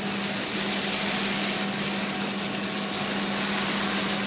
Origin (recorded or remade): recorded